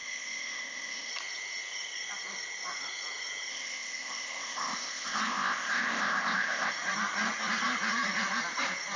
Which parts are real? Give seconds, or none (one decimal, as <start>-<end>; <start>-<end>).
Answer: 1.1-3.5; 6.7-9.0